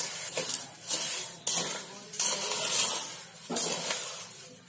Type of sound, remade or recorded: recorded